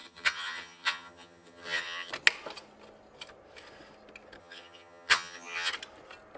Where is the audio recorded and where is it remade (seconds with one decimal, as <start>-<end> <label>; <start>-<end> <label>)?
0.0-2.1 remade; 2.1-4.4 recorded; 4.4-5.7 remade; 5.7-6.4 recorded